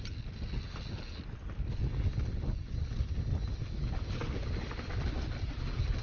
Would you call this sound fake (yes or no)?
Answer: no